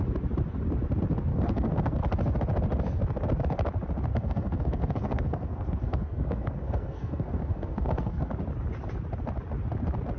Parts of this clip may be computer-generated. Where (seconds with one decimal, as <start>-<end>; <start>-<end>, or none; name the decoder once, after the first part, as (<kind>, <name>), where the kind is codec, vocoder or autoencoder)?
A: 1.3-2.0 (codec, SNAC); 4.1-8.3